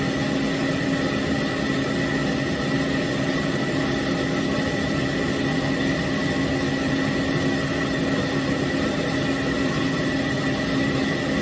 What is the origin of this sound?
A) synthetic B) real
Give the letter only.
B